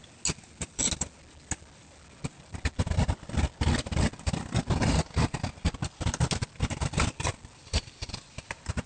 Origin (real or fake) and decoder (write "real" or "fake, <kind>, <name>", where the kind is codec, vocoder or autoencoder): real